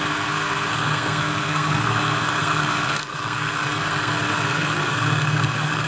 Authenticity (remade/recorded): remade